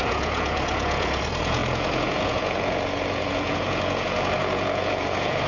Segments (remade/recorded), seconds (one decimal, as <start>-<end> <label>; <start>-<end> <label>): 0.0-5.5 remade